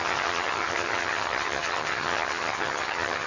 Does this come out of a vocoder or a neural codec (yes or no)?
yes